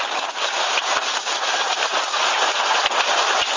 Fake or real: real